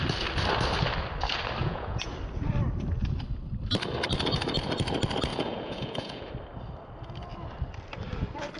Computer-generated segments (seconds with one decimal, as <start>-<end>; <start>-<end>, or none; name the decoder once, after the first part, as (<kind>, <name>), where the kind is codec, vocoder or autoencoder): 1.6-2.1 (vocoder, Vocos); 5.3-6.3